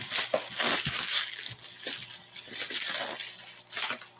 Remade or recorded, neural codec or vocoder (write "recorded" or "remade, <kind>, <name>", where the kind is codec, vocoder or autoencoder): recorded